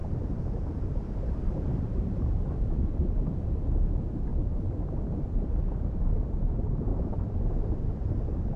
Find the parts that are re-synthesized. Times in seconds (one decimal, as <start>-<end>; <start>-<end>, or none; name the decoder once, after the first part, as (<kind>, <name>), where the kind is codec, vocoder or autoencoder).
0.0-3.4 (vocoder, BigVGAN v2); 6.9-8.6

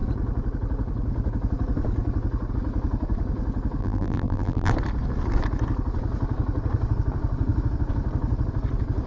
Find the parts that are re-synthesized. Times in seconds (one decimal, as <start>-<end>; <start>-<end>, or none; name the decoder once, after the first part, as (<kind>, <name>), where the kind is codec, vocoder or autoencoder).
3.8-4.7 (vocoder, BigVGAN v2)

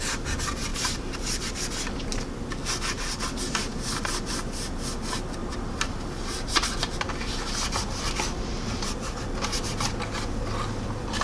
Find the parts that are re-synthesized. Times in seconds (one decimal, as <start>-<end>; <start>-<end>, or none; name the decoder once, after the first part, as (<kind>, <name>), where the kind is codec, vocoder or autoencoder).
0.7-1.5 (vocoder, BigVGAN v2); 5.4-6.8

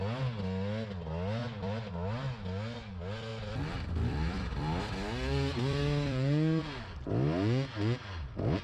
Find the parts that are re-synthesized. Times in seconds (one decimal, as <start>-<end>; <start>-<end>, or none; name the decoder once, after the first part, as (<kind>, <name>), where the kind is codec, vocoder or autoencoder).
1.4-1.9 (vocoder, BigVGAN v2); 3.3-6.6

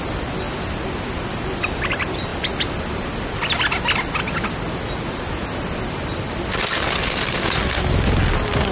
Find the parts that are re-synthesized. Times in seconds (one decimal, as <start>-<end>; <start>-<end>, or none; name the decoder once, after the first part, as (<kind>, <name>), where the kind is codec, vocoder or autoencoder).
none

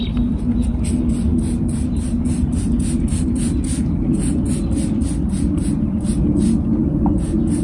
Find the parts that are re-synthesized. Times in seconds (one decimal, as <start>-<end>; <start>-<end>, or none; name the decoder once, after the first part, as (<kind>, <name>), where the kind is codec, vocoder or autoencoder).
none

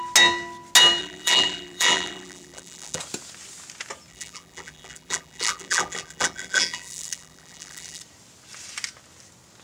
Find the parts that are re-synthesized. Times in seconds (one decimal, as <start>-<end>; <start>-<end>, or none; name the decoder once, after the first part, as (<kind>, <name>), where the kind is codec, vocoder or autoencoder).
1.0-3.0 (vocoder, BigVGAN v2); 4.1-8.0

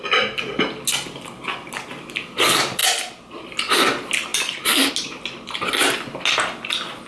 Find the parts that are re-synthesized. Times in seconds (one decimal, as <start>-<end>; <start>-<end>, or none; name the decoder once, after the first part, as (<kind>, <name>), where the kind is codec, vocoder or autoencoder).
none